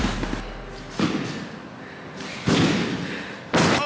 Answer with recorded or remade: recorded